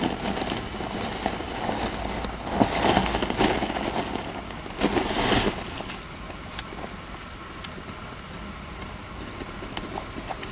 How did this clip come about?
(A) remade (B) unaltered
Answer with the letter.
B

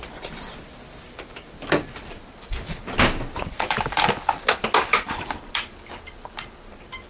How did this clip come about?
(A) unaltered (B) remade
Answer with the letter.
A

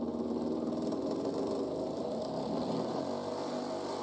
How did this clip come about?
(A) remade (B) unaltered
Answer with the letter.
B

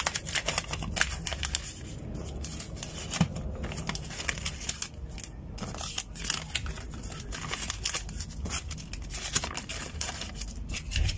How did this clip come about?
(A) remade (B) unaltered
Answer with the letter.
B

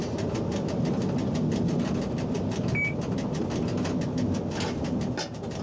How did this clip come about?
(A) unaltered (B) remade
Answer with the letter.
A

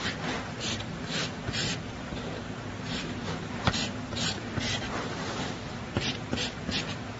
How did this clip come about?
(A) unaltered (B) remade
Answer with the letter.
A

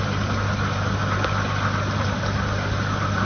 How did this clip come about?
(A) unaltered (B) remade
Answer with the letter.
A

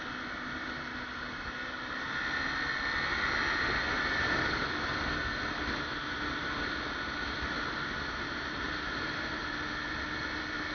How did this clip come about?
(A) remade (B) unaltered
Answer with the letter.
B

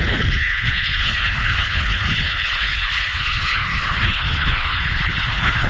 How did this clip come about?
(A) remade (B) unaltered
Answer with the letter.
A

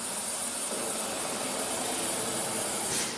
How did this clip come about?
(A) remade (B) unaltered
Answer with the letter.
B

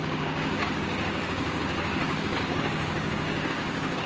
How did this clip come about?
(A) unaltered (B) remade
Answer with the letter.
B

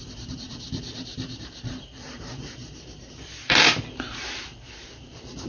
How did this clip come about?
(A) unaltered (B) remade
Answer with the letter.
B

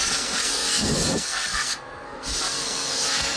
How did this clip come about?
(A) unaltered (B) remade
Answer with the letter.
B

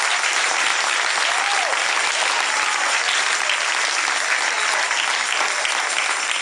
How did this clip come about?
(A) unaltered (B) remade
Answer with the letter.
A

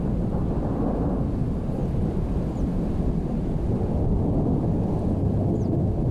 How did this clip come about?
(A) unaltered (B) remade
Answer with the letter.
A